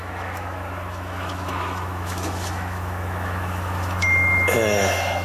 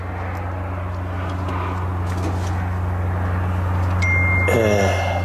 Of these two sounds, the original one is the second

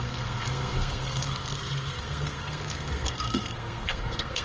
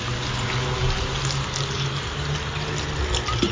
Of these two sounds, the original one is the second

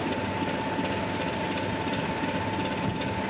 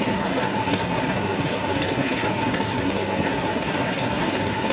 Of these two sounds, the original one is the first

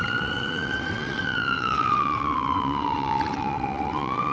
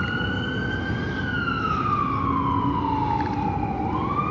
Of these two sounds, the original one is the second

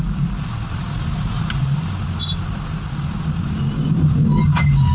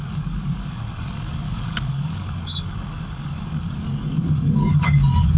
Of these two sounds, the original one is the first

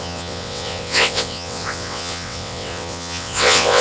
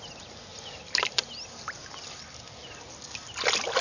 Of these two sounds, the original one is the second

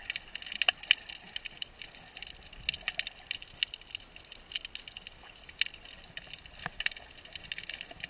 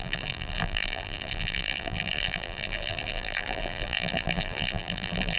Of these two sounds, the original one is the first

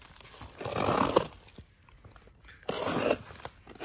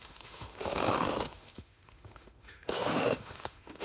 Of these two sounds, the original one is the first